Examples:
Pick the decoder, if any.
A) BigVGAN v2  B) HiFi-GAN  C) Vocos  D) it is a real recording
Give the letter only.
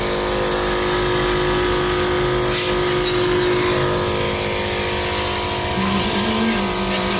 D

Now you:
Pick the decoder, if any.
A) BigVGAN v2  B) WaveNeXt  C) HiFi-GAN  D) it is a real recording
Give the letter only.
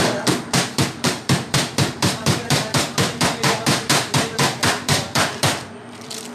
A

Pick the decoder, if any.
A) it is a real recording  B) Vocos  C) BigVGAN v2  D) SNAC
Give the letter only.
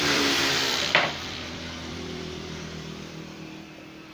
C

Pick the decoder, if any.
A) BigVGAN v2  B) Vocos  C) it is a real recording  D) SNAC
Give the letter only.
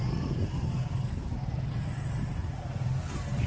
C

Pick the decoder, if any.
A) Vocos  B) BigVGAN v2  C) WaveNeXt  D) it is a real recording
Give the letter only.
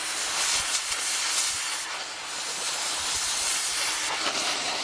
D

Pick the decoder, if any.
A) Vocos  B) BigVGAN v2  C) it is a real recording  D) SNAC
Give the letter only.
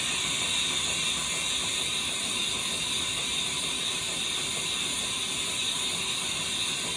C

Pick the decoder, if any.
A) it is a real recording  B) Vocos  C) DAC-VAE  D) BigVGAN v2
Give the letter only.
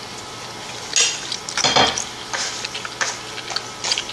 A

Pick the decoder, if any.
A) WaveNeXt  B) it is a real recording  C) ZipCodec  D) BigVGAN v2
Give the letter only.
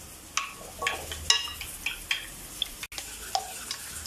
B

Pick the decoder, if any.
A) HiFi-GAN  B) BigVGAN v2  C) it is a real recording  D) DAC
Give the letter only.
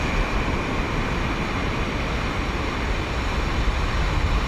C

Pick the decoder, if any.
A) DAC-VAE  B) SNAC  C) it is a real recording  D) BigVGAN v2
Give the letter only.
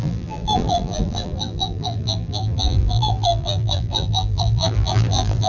D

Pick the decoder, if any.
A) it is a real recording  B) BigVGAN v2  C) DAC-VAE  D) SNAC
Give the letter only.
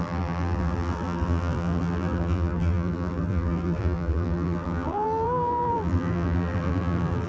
B